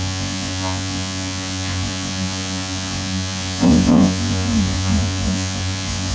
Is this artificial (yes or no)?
yes